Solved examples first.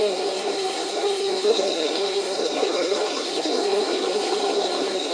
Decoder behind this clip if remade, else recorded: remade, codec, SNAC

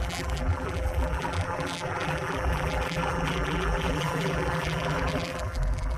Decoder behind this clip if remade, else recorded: remade, vocoder, BigVGAN v2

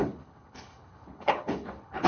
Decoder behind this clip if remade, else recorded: remade, codec, HILCodec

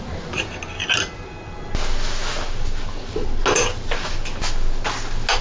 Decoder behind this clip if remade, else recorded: recorded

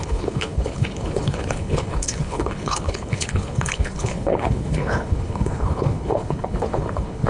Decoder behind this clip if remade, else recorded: remade, codec, HILCodec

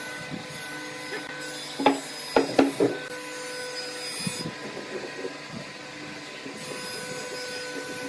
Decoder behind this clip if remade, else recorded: recorded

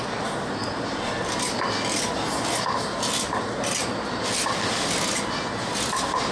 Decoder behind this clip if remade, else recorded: recorded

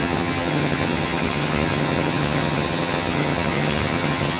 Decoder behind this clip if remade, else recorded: remade, vocoder, HiFi-GAN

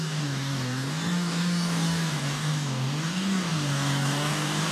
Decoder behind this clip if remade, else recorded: remade, codec, DAC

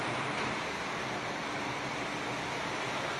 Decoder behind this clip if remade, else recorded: recorded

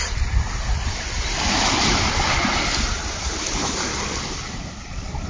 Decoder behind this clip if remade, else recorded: recorded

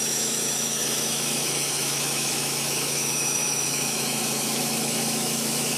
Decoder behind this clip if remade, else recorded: remade, autoencoder, DAC-VAE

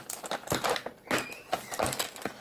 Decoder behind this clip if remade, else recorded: recorded